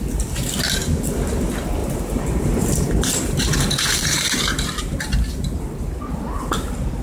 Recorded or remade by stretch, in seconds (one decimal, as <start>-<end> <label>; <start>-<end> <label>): 0.0-1.8 recorded; 1.8-5.0 remade; 5.0-7.0 recorded